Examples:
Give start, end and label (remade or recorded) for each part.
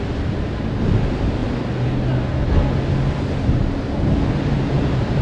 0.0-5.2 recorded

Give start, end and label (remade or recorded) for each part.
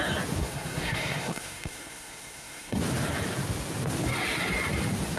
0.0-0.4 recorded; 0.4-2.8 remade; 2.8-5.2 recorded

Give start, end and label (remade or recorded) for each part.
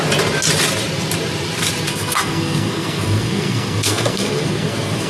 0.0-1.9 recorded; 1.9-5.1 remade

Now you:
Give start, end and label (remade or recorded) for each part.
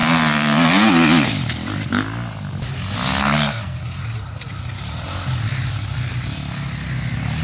0.0-3.2 recorded; 3.2-3.8 remade; 3.8-7.4 recorded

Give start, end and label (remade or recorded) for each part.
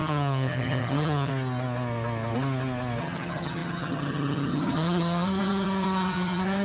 0.0-1.3 remade; 1.3-3.0 recorded; 3.0-6.6 remade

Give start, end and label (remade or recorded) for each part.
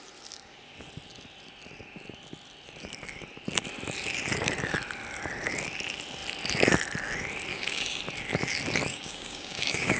0.0-7.5 recorded; 7.5-8.0 remade; 8.0-8.9 recorded; 8.9-10.0 remade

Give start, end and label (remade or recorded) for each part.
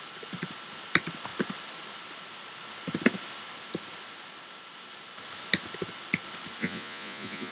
0.0-6.6 recorded; 6.6-7.5 remade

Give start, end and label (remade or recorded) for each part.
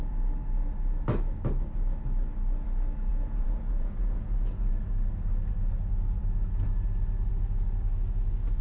0.0-3.1 recorded; 3.1-4.7 remade; 4.7-8.6 recorded